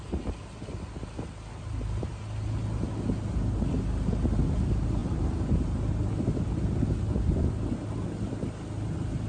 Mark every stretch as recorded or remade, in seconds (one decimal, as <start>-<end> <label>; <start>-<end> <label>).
0.0-5.0 recorded; 5.0-5.5 remade; 5.5-9.3 recorded